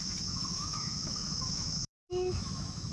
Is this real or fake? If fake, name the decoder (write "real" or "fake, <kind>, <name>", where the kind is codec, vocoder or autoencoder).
fake, autoencoder, DAC-VAE